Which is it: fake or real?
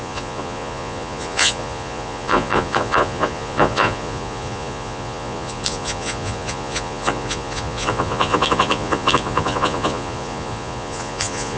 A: fake